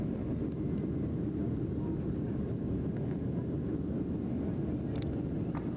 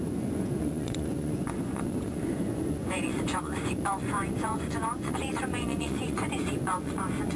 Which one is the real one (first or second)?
first